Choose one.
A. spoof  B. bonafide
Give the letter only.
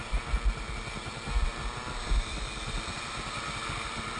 B